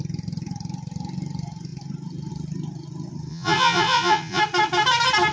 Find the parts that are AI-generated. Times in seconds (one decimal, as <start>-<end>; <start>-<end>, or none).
3.3-4.4